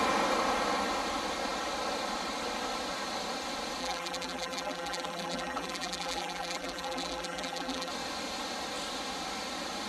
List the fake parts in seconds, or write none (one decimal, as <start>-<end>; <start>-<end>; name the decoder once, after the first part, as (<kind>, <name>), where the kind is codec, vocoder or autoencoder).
3.8-7.9 (vocoder, BigVGAN v2)